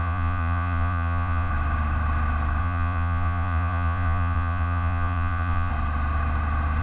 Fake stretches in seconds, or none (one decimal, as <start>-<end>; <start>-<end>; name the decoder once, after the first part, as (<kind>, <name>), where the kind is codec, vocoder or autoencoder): 0.0-1.5 (vocoder, Vocos); 2.6-5.7